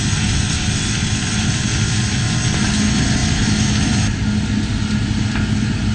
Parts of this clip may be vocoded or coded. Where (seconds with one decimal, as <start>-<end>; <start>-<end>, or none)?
none

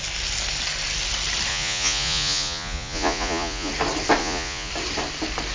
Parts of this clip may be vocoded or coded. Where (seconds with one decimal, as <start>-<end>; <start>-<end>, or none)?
1.5-3.7; 4.2-4.7

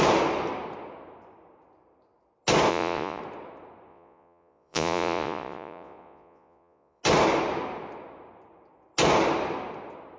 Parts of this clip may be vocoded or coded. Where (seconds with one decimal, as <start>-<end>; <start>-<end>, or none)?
2.7-3.2; 3.9-7.0

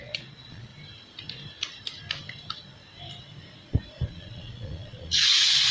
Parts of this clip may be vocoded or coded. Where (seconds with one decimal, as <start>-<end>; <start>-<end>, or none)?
0.0-0.7; 4.1-5.7

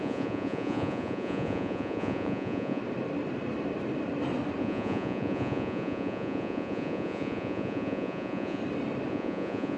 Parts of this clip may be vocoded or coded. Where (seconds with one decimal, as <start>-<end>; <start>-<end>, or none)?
0.0-2.8; 4.6-8.6; 9.1-9.8

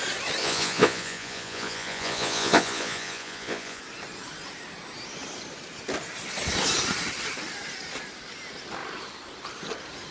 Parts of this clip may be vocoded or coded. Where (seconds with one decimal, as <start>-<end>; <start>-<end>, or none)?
0.4-3.8